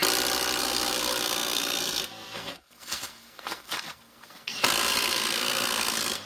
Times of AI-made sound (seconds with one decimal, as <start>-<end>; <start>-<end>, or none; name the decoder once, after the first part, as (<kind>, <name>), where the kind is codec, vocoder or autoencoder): 0.6-6.3 (codec, SNAC)